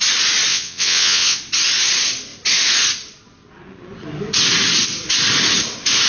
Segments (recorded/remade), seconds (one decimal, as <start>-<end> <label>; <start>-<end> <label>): 0.0-0.5 recorded; 0.5-1.4 remade; 1.4-6.1 recorded